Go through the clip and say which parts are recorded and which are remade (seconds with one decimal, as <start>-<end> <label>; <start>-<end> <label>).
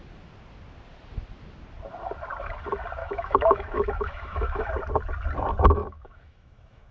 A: 0.0-3.0 recorded; 3.0-4.7 remade; 4.7-5.8 recorded; 5.8-6.9 remade